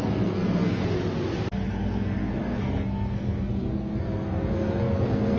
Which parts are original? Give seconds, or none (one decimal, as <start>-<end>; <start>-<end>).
0.8-1.7